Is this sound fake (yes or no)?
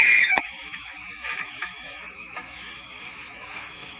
yes